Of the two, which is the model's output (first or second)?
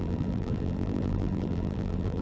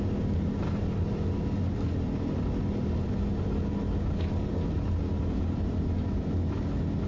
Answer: first